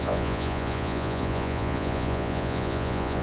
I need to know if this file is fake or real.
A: fake